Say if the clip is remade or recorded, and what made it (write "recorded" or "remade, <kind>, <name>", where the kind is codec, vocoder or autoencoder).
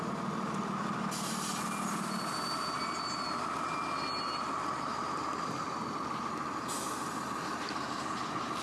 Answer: recorded